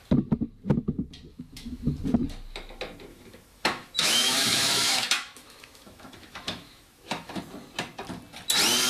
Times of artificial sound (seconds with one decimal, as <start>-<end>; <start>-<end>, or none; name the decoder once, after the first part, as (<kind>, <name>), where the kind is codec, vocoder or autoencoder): 1.3-1.9 (autoencoder, DAC-VAE); 3.1-7.4